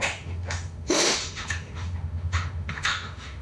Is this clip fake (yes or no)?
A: yes